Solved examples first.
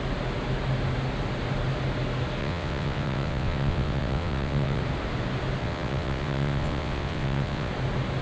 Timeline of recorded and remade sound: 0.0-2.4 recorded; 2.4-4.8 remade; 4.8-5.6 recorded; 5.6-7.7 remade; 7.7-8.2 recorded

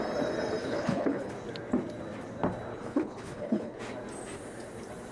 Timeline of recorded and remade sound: 0.0-0.6 recorded; 0.6-1.3 remade; 1.3-2.8 recorded; 2.8-3.8 remade; 3.8-5.1 recorded

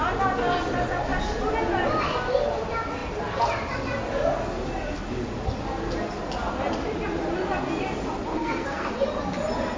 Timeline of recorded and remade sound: 0.0-8.3 recorded; 8.3-8.9 remade; 8.9-9.8 recorded

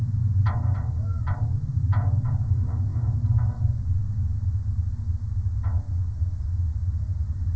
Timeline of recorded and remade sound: 0.0-7.6 recorded

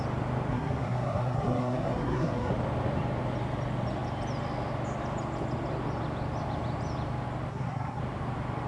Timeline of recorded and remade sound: 0.0-0.5 recorded; 0.5-2.5 remade; 2.5-7.5 recorded; 7.5-8.0 remade; 8.0-8.7 recorded